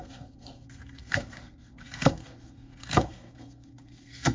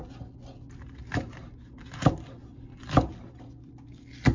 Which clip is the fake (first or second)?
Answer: first